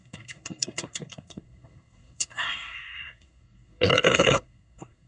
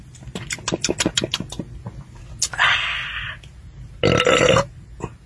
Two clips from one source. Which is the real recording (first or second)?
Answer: second